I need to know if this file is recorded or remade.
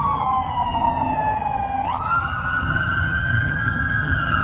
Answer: remade